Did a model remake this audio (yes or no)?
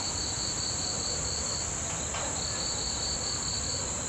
no